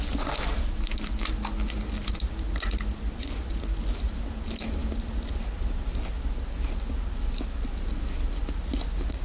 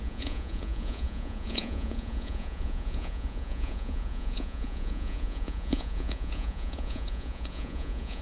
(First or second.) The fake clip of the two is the second